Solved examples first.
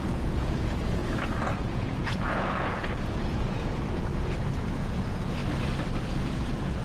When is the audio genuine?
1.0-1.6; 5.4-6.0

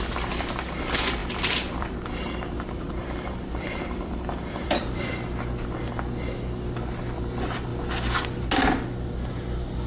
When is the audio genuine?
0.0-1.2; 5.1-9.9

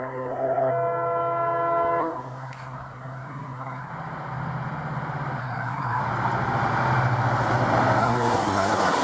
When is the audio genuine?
0.7-2.0; 3.9-5.4; 6.0-8.0

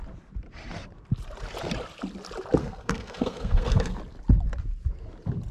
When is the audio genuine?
0.0-2.6; 4.0-5.5